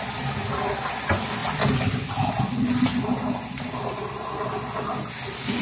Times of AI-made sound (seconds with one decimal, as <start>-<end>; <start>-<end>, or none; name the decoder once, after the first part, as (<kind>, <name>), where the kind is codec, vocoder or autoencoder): none